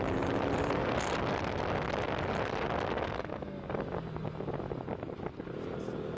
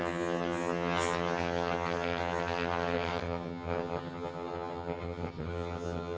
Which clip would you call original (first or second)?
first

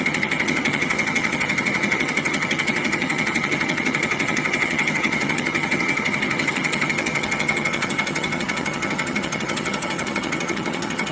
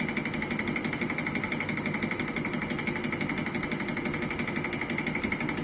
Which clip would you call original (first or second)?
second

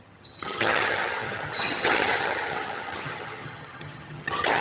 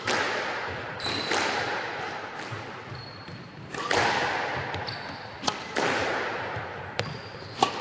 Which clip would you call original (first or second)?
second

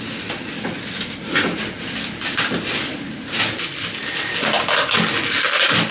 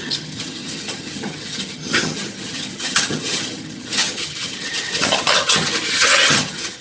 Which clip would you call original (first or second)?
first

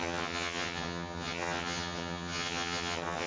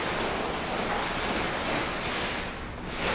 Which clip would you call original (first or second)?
second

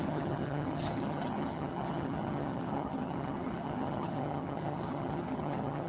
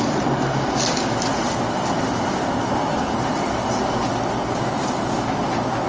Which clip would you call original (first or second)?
second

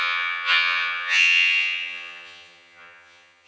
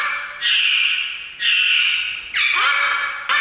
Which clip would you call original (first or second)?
second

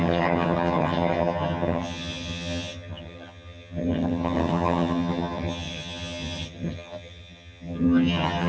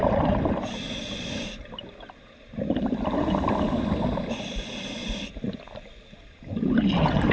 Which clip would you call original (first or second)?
second